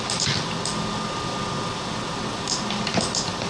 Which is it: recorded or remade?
recorded